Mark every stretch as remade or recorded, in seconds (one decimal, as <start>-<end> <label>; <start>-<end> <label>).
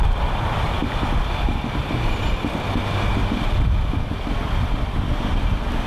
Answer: 0.0-5.9 recorded